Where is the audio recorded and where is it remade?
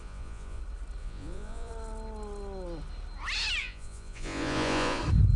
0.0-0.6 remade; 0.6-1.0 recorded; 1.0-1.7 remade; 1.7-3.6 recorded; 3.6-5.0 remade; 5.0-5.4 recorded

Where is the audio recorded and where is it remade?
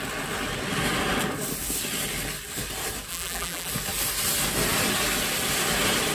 0.0-3.1 recorded; 3.1-3.7 remade; 3.7-6.1 recorded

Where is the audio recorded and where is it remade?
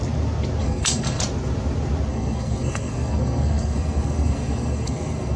0.0-0.6 recorded; 0.6-1.2 remade; 1.2-2.1 recorded; 2.1-5.4 remade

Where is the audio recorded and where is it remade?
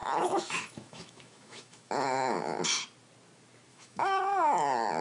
0.0-2.6 remade; 2.6-3.7 recorded; 3.7-4.2 remade; 4.2-5.0 recorded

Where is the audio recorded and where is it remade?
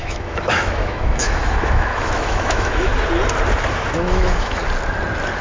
0.0-2.9 remade; 2.9-3.7 recorded; 3.7-4.6 remade; 4.6-5.4 recorded